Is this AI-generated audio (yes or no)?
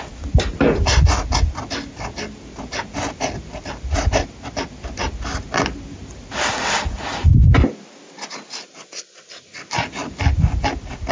no